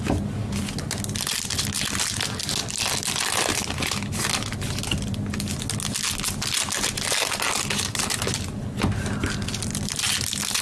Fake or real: real